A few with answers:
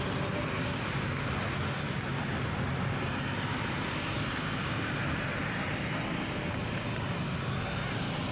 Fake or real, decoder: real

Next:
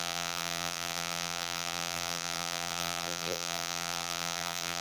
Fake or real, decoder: fake, vocoder, BigVGAN v2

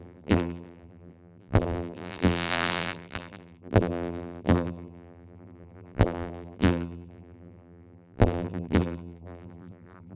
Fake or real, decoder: fake, vocoder, BigVGAN v2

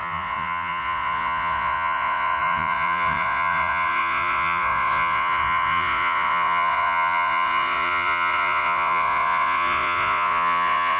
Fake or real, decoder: fake, vocoder, Vocos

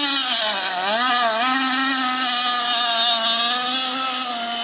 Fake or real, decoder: real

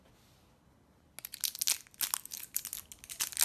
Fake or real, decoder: real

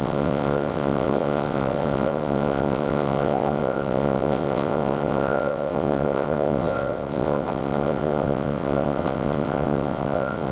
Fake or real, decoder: fake, vocoder, WaveNeXt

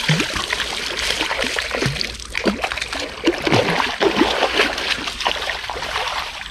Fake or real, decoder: real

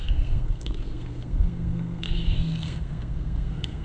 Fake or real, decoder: fake, codec, SNAC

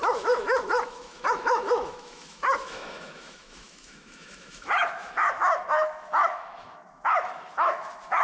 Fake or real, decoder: fake, autoencoder, DAC-VAE